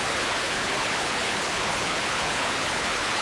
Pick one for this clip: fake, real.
fake